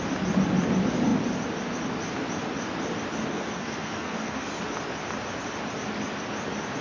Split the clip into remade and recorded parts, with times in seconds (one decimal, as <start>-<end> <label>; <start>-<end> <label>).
0.0-3.3 recorded; 3.3-4.5 remade; 4.5-6.8 recorded